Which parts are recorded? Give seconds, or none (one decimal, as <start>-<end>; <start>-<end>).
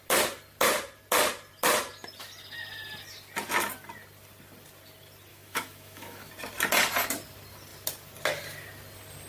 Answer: 0.0-5.3; 6.3-9.3